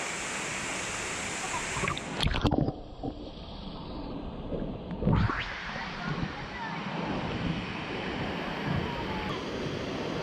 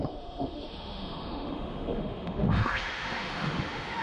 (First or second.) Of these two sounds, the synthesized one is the second